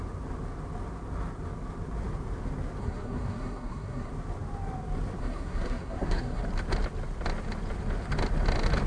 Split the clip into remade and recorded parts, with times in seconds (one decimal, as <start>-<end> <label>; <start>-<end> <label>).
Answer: 0.0-2.8 recorded; 2.8-4.1 remade; 4.1-5.2 recorded; 5.2-6.4 remade; 6.4-8.9 recorded